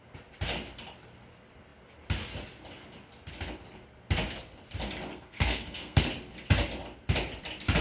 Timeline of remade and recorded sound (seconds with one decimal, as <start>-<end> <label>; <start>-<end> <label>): 0.0-5.1 recorded; 5.1-6.1 remade; 6.1-7.8 recorded

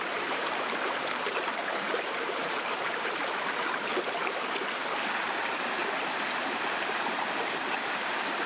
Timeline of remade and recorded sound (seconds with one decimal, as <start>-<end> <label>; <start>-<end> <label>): 0.0-3.9 remade; 3.9-5.5 recorded; 5.5-8.5 remade

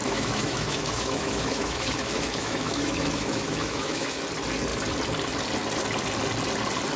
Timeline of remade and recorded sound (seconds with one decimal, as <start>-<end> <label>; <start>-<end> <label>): 0.0-4.2 remade; 4.2-7.0 recorded

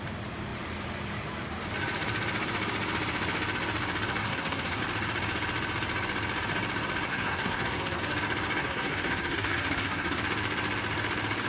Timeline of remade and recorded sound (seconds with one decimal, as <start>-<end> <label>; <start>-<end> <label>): 0.0-4.2 recorded; 4.2-4.8 remade; 4.8-7.1 recorded; 7.1-8.0 remade; 8.0-8.6 recorded; 8.6-10.2 remade; 10.2-11.5 recorded

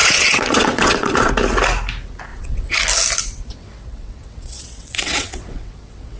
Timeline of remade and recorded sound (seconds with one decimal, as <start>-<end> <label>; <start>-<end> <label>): 0.0-1.3 remade; 1.3-2.3 recorded; 2.3-2.8 remade; 2.8-3.5 recorded; 3.5-6.2 remade

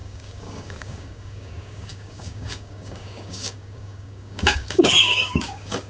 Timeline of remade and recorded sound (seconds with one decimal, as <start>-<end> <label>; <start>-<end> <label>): 0.0-5.9 remade

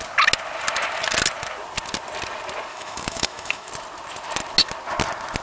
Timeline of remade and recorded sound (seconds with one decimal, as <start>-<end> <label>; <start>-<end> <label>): 0.0-2.7 recorded; 2.7-3.7 remade; 3.7-5.4 recorded